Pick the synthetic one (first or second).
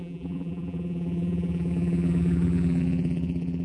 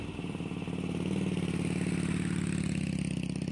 first